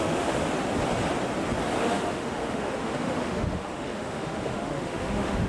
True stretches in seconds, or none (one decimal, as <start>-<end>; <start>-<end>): 0.4-1.8